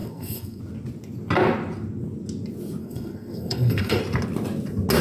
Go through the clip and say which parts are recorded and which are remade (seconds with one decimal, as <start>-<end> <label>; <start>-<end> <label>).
0.0-0.6 remade; 0.6-2.8 recorded; 2.8-4.0 remade; 4.0-5.0 recorded